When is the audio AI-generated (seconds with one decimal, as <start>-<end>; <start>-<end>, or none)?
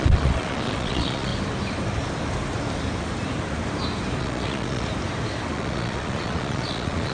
0.0-1.3; 4.2-4.9; 5.5-7.1